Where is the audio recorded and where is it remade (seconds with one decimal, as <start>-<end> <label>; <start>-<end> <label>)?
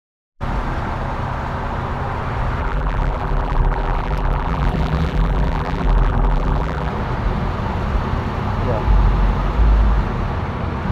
0.0-2.6 recorded; 2.6-6.9 remade; 6.9-10.9 recorded